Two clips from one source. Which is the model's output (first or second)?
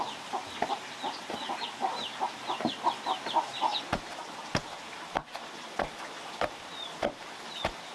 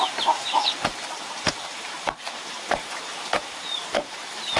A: second